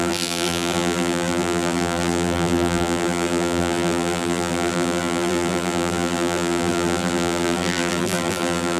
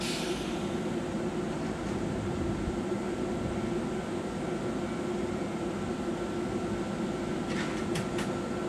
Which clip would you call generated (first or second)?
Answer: first